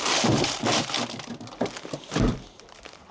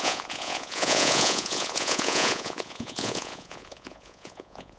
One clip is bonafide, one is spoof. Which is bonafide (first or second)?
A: first